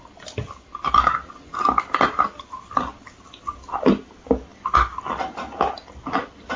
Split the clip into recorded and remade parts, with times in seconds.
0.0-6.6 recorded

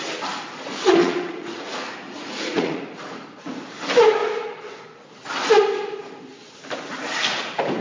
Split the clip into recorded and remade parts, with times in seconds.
0.0-1.0 recorded; 1.0-2.8 remade; 2.8-7.8 recorded

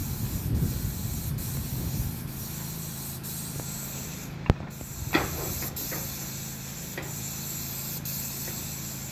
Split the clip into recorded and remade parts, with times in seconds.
0.0-9.1 recorded

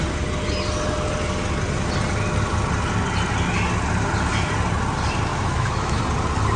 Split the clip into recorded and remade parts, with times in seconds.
0.0-5.3 recorded; 5.3-6.0 remade; 6.0-6.6 recorded